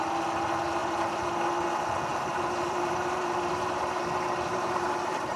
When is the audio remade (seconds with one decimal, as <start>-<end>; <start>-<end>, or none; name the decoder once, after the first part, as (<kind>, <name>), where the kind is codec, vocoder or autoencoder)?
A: 0.8-1.3 (vocoder, BigVGAN v2); 2.1-5.4